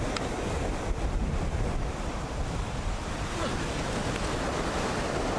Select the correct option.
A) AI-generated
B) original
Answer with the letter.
B